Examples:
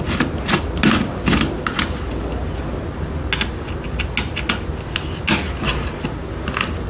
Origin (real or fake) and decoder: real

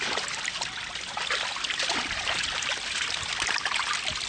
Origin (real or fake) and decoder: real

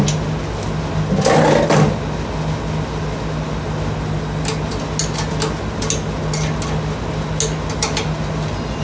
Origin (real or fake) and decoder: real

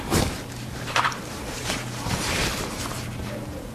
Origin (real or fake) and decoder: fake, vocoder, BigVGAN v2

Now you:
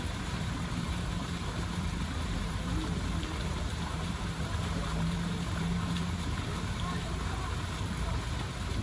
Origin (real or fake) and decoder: fake, vocoder, BigVGAN v2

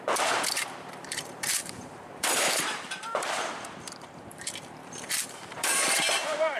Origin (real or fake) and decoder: fake, vocoder, BigVGAN v2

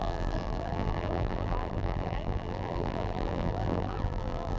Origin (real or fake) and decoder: fake, vocoder, BigVGAN v2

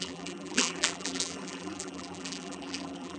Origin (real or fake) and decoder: fake, vocoder, BigVGAN v2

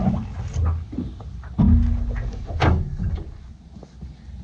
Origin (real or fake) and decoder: real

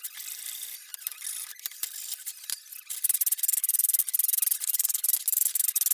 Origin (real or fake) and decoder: real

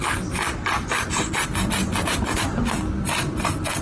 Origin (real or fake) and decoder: real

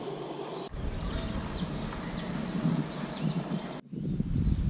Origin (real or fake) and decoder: real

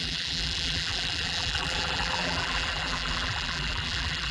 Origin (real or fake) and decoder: fake, vocoder, BigVGAN v2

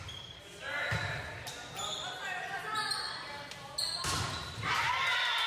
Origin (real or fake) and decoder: real